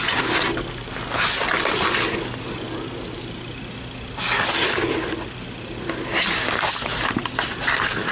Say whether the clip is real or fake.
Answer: real